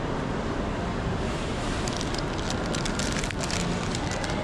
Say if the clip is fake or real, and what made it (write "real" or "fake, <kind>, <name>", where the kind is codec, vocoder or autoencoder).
real